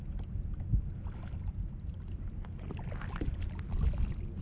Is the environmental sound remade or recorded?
recorded